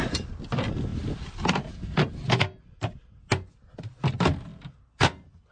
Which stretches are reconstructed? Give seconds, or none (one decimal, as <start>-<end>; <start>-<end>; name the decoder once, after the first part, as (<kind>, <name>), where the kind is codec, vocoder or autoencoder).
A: none

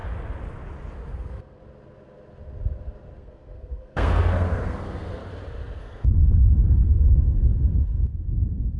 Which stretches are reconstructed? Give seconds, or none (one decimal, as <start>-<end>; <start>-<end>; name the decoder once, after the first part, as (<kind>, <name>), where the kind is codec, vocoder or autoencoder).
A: 1.1-1.6 (codec, SNAC); 3.2-5.2; 5.8-7.5; 8.1-8.8

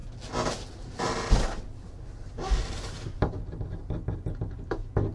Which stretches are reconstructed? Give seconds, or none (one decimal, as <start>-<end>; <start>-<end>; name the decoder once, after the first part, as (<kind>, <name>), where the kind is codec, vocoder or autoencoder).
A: none

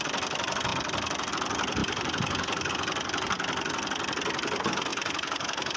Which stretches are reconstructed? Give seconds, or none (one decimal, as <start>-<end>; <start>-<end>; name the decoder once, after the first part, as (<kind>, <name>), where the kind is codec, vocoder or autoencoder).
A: 1.8-2.7 (vocoder, BigVGAN v2); 4.9-5.8